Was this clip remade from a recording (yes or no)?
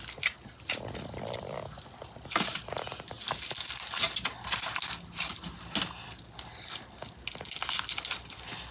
no